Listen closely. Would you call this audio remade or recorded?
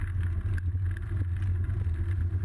recorded